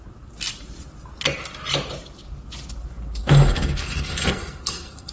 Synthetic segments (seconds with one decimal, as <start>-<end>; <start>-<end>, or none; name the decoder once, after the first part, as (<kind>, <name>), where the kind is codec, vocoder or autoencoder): 3.2-5.1 (codec, SNAC)